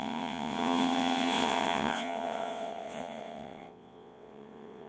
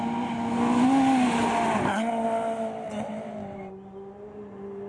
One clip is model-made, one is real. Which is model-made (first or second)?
first